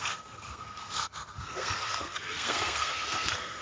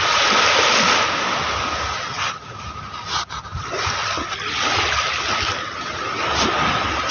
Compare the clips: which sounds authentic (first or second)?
second